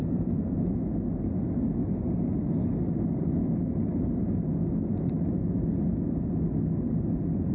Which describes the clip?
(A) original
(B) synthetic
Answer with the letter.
A